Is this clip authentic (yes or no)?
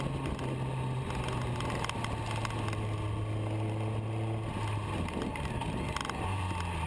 yes